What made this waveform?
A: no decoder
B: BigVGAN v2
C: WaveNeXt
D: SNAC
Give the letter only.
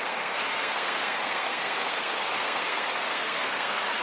D